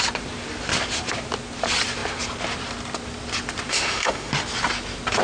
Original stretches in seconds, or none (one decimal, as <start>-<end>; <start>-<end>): 0.0-3.7; 4.3-5.2